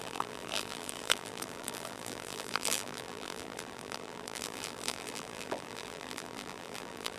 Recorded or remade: remade